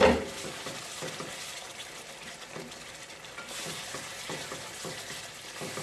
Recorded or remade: recorded